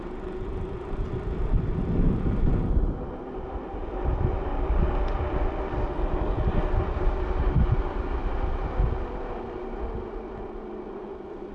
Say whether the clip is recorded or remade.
recorded